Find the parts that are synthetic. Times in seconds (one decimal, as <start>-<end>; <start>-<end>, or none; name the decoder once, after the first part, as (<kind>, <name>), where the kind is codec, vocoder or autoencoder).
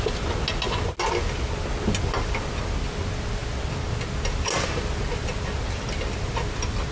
none